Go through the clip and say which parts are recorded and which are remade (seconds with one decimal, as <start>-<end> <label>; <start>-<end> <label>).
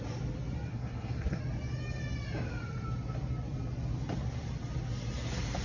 0.0-0.7 recorded; 0.7-1.4 remade; 1.4-5.6 recorded